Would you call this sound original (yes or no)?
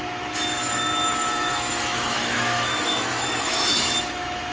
no